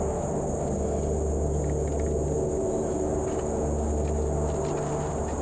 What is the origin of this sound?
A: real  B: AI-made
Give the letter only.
A